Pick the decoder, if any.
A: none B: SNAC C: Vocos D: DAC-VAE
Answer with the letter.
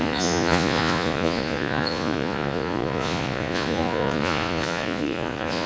C